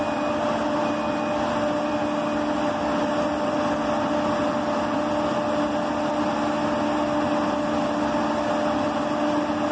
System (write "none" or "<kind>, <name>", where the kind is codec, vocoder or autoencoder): none